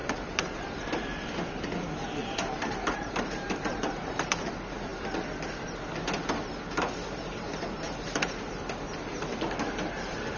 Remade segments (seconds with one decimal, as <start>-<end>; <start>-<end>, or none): 0.0-1.7; 2.2-4.4